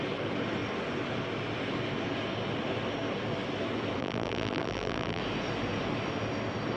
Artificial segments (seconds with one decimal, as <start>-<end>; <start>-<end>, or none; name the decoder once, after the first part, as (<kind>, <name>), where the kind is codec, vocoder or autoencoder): 4.0-5.2 (vocoder, BigVGAN v2)